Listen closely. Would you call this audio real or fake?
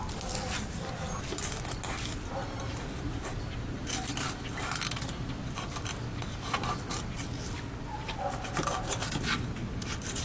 real